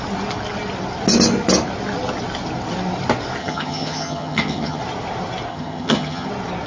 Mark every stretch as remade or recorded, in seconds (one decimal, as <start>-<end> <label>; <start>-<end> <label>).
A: 0.0-3.4 recorded; 3.4-4.8 remade; 4.8-5.5 recorded; 5.5-6.3 remade; 6.3-6.7 recorded